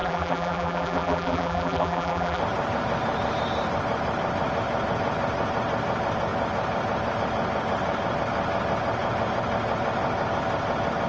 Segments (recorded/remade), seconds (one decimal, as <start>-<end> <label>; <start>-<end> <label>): 0.0-2.4 remade; 2.4-11.1 recorded